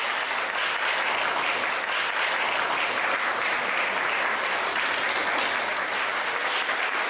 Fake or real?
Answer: real